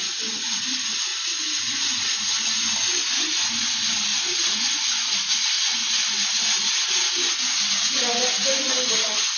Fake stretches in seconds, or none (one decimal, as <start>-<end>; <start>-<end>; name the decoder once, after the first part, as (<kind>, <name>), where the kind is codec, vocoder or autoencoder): 0.0-5.8 (vocoder, BigVGAN v2); 8.7-9.4